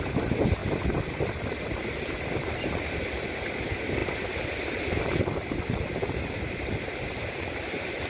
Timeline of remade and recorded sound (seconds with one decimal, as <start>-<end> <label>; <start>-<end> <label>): 0.0-0.6 remade; 0.6-2.5 recorded; 2.5-8.1 remade